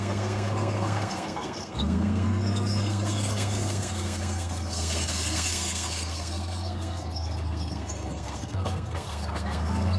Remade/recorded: remade